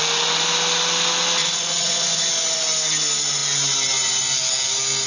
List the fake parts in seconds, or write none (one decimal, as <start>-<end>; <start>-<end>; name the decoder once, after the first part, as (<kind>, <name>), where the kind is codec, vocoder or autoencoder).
1.4-2.3 (vocoder, Vocos)